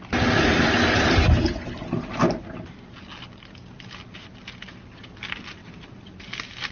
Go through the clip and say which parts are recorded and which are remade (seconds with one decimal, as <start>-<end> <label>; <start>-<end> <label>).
0.0-6.7 recorded